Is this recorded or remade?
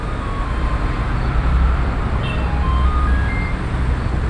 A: recorded